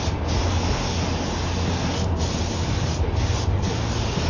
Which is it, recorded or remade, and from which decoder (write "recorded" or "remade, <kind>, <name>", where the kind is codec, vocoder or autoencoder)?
recorded